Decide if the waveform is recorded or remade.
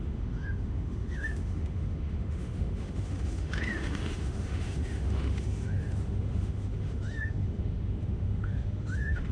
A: remade